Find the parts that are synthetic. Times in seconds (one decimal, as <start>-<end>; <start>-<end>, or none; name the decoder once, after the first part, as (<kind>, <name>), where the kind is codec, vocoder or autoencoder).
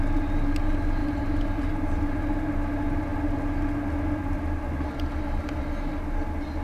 1.0-2.2 (vocoder, BigVGAN v2)